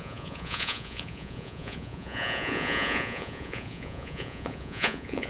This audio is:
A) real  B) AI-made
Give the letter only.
B